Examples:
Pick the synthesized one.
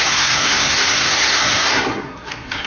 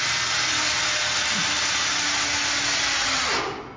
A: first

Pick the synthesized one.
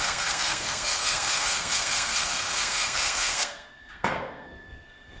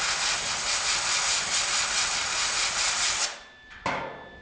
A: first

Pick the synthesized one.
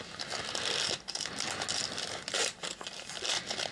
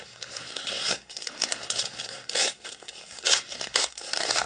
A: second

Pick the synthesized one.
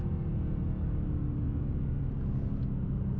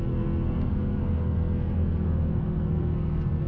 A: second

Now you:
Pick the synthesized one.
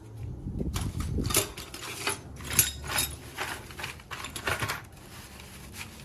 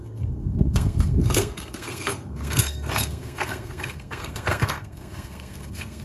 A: second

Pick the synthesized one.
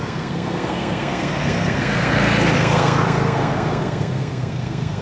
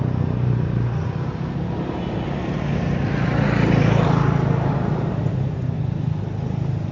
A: first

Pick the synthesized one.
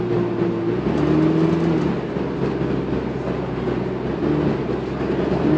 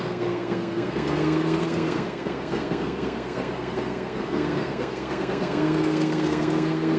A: second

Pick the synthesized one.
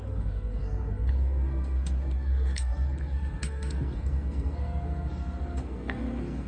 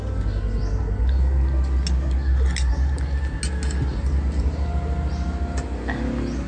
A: first